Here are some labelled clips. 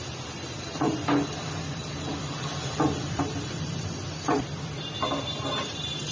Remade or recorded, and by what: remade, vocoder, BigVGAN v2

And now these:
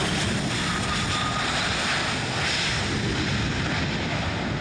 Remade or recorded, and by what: recorded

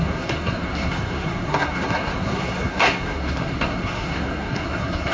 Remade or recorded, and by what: remade, codec, SNAC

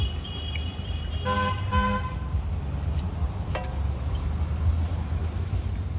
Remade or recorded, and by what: recorded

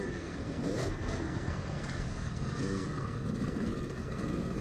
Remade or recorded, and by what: remade, codec, SNAC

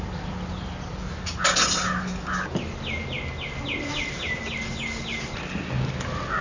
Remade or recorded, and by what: recorded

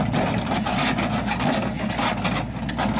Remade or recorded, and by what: recorded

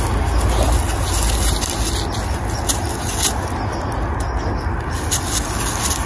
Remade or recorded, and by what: recorded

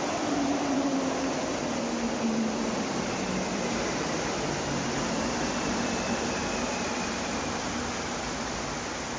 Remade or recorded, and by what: remade, vocoder, BigVGAN v2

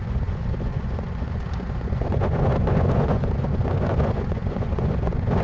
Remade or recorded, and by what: remade, vocoder, Vocos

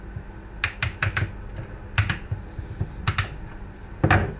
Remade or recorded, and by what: recorded